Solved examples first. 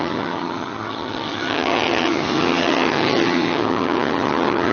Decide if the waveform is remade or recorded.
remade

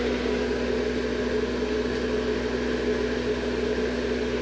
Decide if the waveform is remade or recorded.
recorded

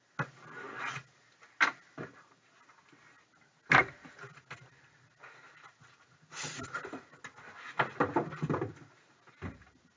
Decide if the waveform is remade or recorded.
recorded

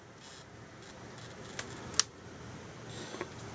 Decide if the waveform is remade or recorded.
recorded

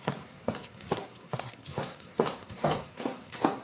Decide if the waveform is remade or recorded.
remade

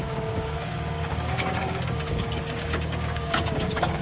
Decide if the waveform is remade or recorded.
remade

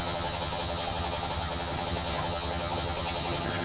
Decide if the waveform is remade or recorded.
remade